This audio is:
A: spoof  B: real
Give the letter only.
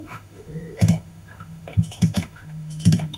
A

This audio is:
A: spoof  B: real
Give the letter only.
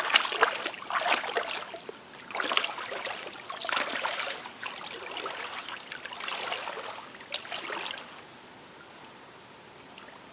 B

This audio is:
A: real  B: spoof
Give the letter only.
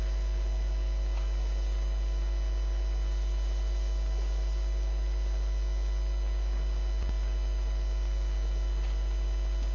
A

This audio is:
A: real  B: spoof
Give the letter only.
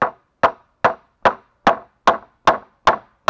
A